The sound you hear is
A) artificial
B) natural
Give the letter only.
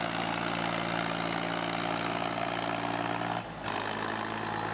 B